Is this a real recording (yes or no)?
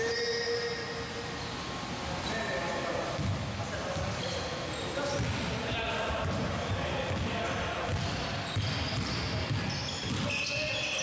yes